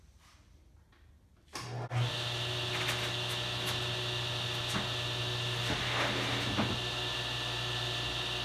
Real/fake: real